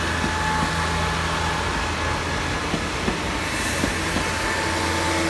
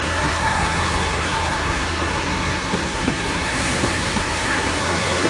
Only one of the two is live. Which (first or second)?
first